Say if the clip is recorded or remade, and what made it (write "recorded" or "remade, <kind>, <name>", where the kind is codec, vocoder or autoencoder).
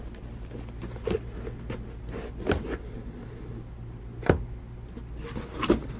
recorded